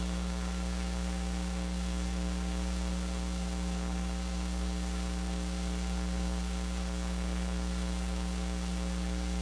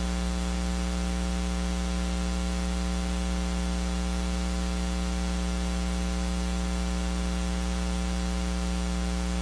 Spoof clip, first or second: first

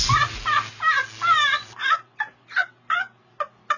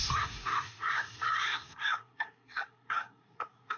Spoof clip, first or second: second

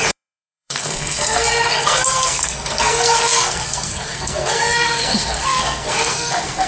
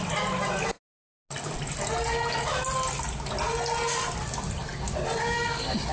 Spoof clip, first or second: first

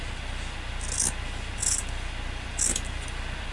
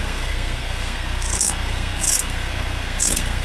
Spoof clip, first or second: second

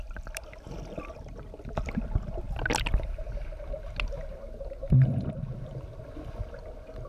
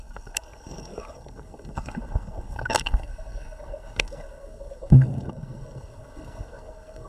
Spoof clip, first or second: second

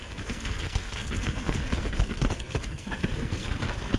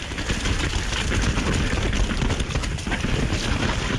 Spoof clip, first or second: first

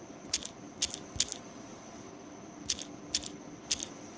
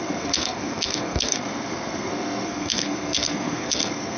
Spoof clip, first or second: second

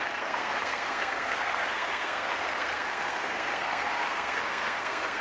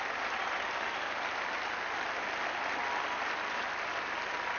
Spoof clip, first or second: first